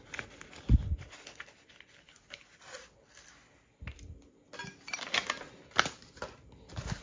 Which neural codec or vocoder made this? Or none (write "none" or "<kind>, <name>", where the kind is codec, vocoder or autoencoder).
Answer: none